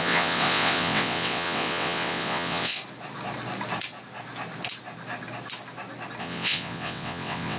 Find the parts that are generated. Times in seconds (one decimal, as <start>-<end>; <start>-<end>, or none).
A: 0.0-2.8; 6.2-7.6